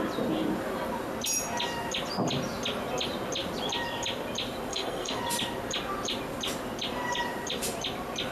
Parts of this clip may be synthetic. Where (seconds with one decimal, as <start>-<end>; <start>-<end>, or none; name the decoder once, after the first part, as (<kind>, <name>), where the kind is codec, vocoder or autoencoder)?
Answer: 4.7-5.2 (codec, SNAC)